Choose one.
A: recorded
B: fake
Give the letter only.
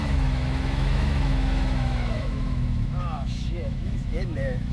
B